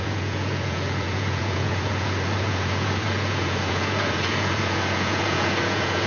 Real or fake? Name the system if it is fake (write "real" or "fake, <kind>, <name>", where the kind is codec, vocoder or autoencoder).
fake, vocoder, Vocos